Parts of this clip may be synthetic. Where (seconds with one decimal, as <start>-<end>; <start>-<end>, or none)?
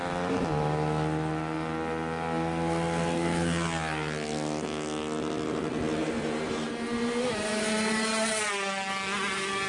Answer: 6.0-8.5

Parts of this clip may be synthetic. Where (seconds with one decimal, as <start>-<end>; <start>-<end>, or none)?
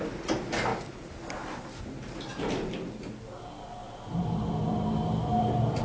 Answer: 0.7-1.8; 3.8-5.8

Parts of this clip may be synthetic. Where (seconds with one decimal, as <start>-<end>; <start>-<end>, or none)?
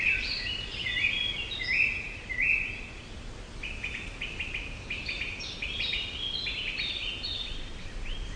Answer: 0.0-0.7; 4.2-8.4